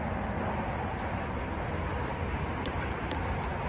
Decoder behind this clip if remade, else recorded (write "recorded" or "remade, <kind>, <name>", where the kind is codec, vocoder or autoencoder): recorded